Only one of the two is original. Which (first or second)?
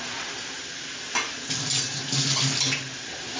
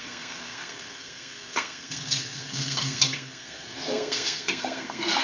first